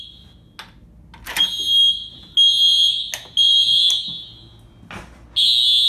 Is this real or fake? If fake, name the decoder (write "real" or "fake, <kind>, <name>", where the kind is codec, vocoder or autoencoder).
real